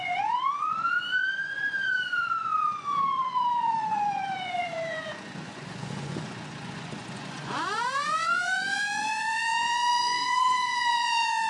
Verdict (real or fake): fake